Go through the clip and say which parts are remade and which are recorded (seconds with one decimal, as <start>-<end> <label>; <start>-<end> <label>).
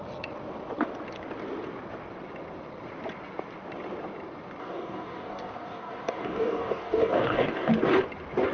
0.0-4.6 recorded; 4.6-7.7 remade; 7.7-8.5 recorded